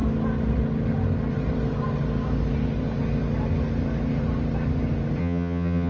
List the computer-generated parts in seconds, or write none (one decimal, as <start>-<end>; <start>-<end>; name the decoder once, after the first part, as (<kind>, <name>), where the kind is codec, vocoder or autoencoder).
5.2-5.9 (vocoder, HiFi-GAN)